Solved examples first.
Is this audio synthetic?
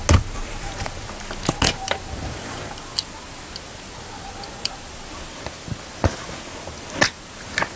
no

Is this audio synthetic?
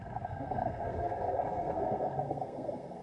yes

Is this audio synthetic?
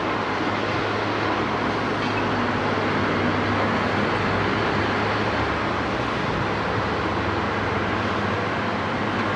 no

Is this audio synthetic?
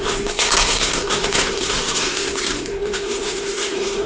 yes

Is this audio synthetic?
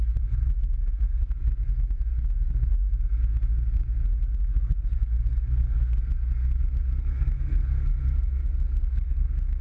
yes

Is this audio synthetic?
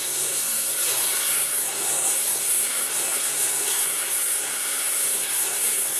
yes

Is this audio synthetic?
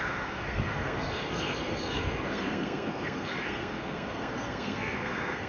yes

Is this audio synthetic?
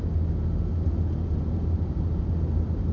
no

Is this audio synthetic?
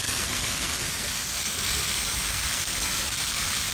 yes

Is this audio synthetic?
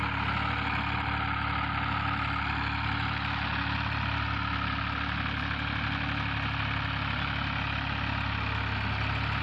no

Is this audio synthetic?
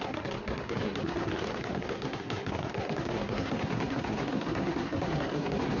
yes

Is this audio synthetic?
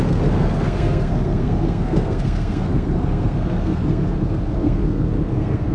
yes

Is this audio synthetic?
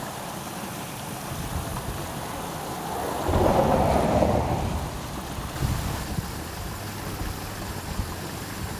no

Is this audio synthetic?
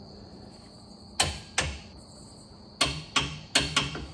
no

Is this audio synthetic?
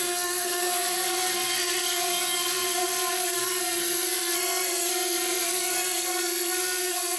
yes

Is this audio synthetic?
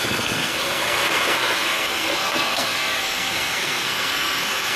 yes